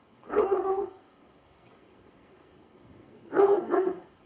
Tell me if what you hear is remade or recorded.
remade